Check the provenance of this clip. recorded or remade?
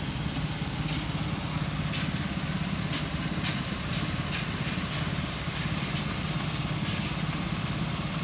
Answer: recorded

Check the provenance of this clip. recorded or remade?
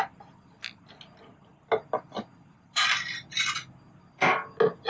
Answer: recorded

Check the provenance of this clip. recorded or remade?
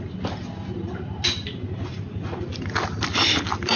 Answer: recorded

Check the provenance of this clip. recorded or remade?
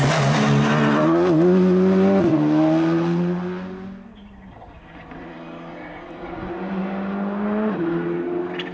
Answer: recorded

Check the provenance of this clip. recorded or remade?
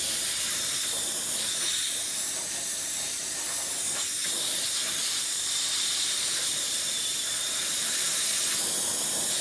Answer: remade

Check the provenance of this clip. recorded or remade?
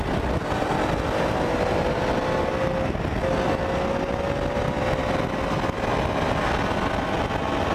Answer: recorded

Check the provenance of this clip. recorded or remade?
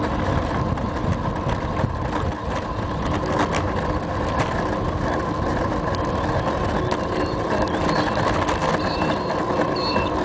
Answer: recorded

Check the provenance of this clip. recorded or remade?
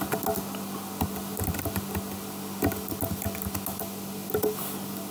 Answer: recorded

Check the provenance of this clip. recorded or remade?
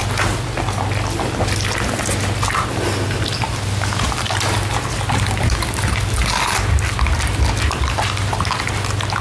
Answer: recorded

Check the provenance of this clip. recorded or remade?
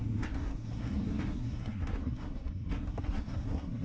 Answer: remade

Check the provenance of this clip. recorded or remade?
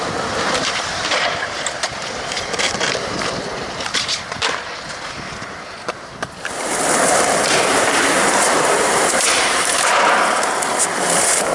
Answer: remade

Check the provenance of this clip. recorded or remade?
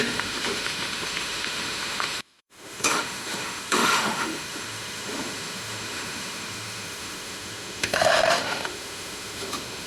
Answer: remade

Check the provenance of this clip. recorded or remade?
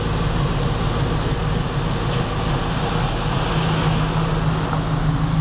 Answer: recorded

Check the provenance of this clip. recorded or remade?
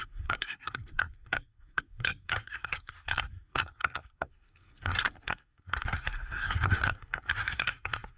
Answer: remade